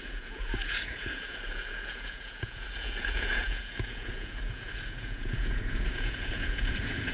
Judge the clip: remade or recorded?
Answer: remade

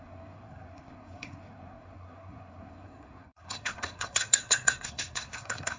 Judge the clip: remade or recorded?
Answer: remade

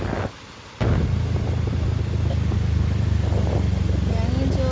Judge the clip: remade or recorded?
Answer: recorded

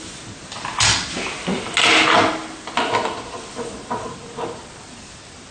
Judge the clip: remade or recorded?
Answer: recorded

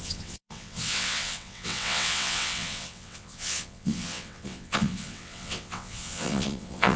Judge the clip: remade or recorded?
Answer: remade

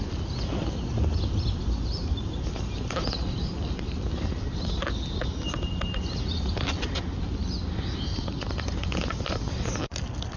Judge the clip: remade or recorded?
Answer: recorded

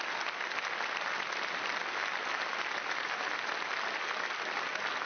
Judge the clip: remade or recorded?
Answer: recorded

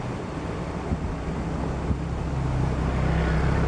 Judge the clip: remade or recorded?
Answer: recorded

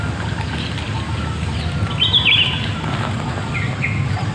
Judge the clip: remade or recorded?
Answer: recorded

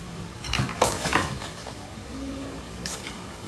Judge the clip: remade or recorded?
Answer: remade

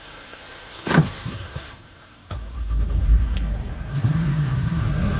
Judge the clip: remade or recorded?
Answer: remade